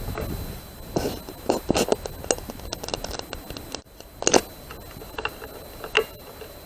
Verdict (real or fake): real